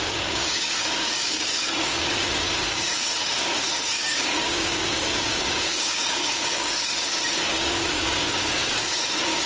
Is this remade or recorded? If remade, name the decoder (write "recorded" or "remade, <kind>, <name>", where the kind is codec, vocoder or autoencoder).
remade, codec, DAC